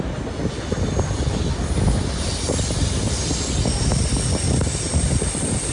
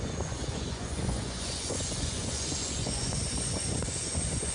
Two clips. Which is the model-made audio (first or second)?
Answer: second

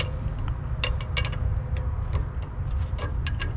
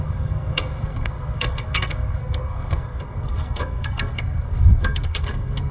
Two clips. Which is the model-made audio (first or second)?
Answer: second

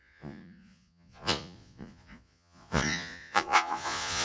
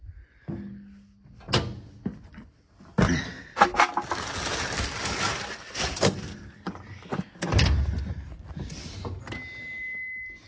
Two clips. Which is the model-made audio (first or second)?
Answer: first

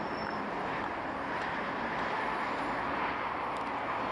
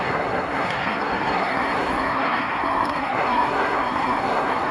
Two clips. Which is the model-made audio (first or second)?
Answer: second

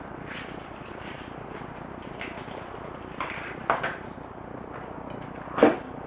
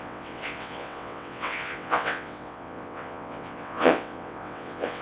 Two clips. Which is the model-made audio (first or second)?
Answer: second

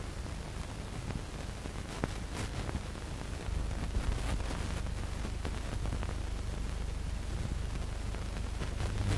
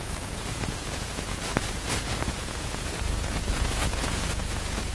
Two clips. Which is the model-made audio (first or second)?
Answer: second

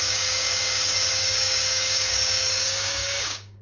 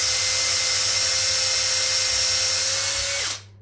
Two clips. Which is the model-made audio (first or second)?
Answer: first